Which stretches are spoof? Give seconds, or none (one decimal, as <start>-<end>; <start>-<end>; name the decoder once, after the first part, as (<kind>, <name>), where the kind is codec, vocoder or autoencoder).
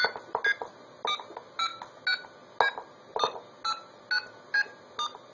none